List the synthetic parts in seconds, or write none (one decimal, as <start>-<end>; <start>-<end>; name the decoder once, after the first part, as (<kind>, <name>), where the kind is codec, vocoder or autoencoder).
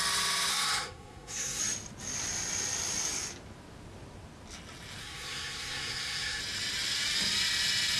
0.5-1.6 (codec, SNAC); 5.0-6.4